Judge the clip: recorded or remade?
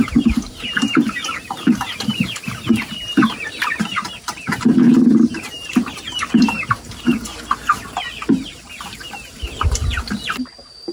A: remade